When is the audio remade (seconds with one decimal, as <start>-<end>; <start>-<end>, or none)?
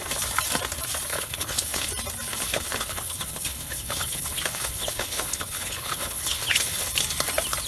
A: 1.1-1.9; 2.3-6.9